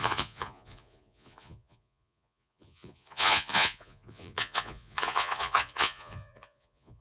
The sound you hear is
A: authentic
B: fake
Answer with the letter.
B